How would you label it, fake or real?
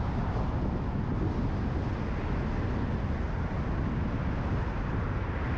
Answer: real